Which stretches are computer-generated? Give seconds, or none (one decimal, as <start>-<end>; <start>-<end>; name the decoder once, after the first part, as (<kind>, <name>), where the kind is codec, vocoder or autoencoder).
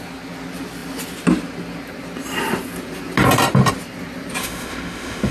4.4-5.3 (autoencoder, DAC-VAE)